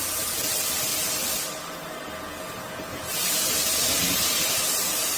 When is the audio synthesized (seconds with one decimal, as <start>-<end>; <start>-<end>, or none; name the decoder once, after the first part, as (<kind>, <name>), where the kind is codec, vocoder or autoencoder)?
0.0-0.9 (vocoder, BigVGAN v2); 2.9-5.2